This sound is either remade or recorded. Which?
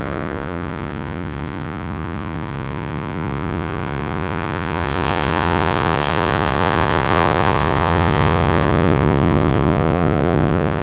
remade